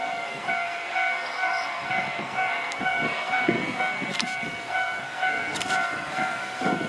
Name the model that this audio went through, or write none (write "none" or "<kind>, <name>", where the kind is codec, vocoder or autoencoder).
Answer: codec, SNAC